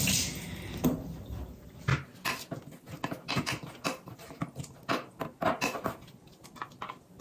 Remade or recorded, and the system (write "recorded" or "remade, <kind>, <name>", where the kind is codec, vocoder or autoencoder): recorded